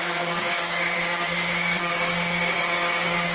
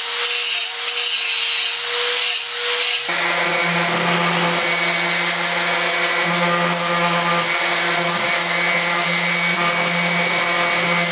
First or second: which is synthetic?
first